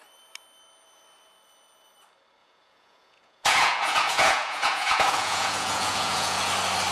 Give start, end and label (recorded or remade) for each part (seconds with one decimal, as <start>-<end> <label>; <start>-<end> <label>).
0.0-2.4 recorded; 2.4-6.5 remade; 6.5-6.9 recorded